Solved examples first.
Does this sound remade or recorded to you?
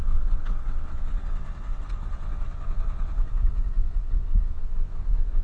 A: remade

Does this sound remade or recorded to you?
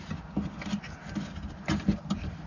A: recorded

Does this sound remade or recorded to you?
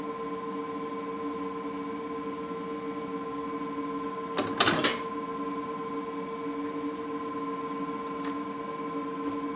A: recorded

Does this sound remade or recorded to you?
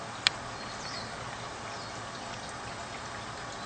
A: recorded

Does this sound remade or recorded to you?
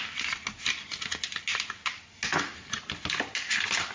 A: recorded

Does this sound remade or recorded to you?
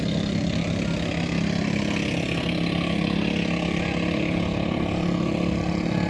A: recorded